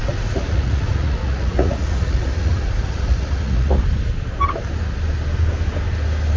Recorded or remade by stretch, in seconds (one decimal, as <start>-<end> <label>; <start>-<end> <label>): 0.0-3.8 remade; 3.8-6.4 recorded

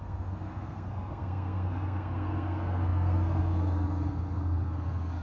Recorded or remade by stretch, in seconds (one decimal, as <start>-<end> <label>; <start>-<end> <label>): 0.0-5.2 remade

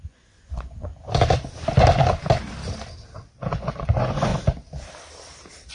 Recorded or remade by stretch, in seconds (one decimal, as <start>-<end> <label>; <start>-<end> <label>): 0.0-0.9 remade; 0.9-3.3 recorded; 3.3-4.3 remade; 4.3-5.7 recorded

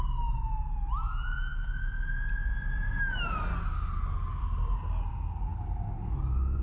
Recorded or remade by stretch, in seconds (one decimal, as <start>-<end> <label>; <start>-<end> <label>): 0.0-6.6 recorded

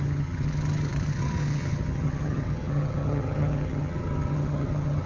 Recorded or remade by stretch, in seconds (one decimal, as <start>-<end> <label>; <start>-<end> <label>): 0.0-5.1 remade

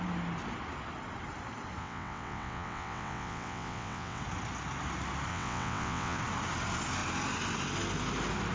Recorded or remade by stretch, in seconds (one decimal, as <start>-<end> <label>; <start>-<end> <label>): 0.0-1.8 recorded; 1.8-4.2 remade; 4.2-5.3 recorded; 5.3-6.2 remade; 6.2-8.5 recorded

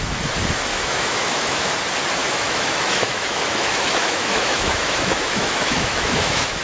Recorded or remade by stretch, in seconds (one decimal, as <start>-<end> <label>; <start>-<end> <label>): 0.0-0.7 recorded; 0.7-1.7 remade; 1.7-2.2 recorded; 2.2-6.6 remade